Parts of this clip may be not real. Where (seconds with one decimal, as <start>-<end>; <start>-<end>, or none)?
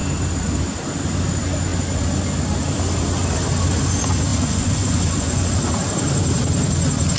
4.3-5.5